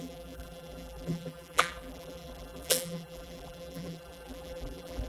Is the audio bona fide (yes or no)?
no